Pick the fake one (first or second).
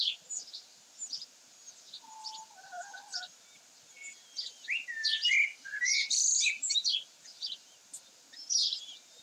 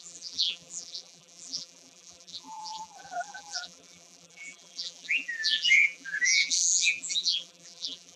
second